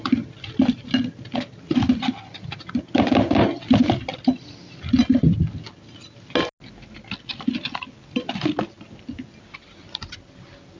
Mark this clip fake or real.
real